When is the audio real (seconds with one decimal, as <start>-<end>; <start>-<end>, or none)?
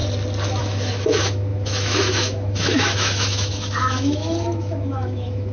0.0-0.6